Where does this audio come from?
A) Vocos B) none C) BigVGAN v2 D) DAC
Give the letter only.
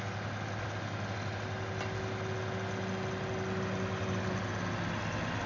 B